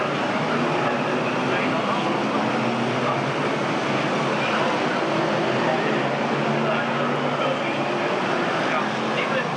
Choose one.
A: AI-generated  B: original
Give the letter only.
B